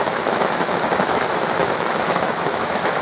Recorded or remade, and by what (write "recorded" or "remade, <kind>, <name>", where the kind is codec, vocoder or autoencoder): remade, autoencoder, DAC-VAE